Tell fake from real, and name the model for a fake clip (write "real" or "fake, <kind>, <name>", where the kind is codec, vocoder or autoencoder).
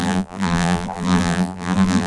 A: fake, vocoder, BigVGAN v2